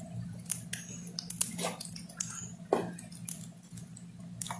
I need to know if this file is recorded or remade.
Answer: recorded